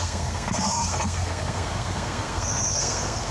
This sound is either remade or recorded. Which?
remade